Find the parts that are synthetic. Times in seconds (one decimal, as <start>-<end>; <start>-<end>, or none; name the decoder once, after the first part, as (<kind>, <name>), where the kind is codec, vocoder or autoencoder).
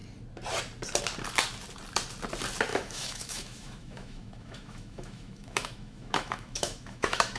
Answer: 2.7-7.4 (autoencoder, DAC-VAE)